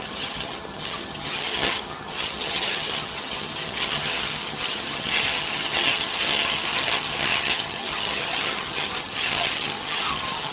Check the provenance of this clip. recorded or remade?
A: remade